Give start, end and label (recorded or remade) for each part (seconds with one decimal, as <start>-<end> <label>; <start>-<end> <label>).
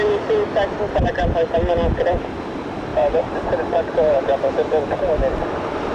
0.0-2.9 recorded; 2.9-4.3 remade; 4.3-5.9 recorded